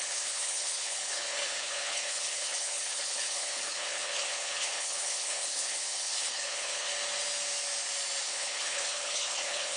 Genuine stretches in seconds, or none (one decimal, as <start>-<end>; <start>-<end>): 6.9-8.2